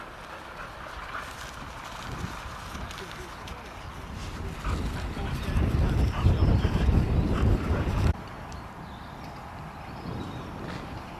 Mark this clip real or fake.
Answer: real